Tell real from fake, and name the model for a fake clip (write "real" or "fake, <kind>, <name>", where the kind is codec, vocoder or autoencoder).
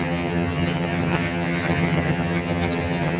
fake, vocoder, HiFi-GAN